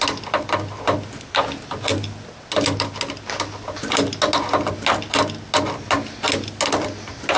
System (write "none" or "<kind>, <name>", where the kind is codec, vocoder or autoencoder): none